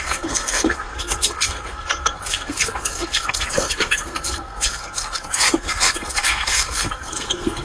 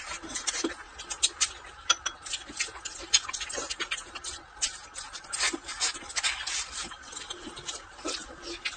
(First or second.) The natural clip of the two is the second